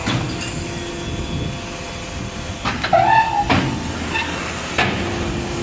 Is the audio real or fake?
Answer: real